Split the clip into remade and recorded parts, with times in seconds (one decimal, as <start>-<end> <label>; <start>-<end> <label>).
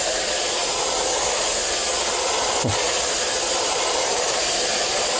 0.0-0.6 remade; 0.6-3.6 recorded; 3.6-5.2 remade